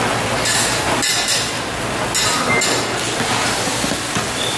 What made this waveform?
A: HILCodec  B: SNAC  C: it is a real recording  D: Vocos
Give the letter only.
C